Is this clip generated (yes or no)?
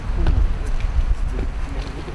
no